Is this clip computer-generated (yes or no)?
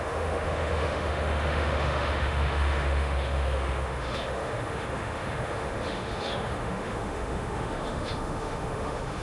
yes